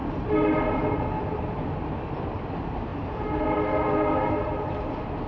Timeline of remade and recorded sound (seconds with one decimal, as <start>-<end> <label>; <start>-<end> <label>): 0.0-1.2 remade; 1.2-2.9 recorded; 2.9-5.3 remade